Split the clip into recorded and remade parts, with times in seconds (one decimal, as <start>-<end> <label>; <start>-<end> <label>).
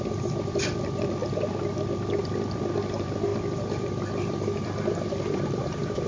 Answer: 0.0-1.2 remade; 1.2-2.2 recorded; 2.2-6.1 remade